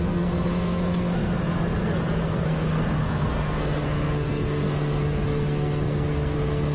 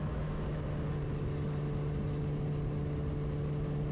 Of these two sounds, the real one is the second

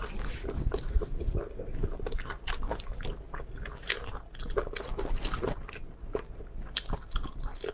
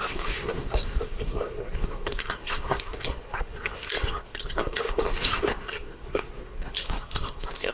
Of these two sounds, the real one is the first